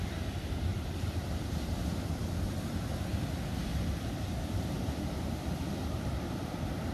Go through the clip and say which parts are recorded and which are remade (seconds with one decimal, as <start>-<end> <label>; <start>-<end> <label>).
0.0-0.7 recorded; 0.7-2.8 remade; 2.8-3.7 recorded; 3.7-6.9 remade